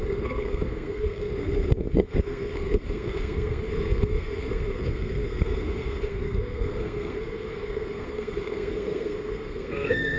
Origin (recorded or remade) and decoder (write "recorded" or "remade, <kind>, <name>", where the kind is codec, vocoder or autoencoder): remade, codec, SNAC